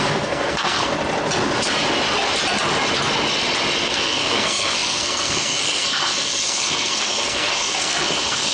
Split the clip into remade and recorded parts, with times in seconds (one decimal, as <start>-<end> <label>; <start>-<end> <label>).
0.0-0.9 remade; 0.9-3.8 recorded; 3.8-8.5 remade